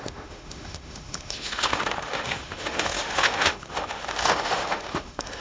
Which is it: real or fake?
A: fake